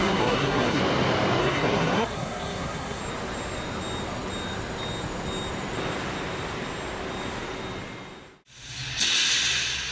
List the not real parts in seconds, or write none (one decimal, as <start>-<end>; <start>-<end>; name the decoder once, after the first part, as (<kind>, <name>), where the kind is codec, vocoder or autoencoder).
0.0-0.8 (codec, SNAC); 1.4-3.0